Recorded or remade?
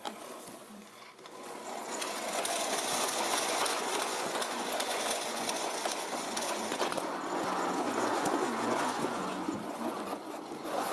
remade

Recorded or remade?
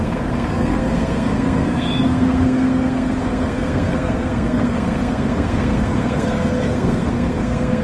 remade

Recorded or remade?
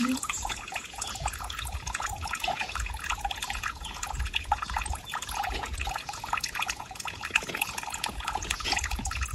remade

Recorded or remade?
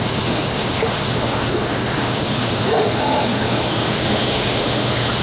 remade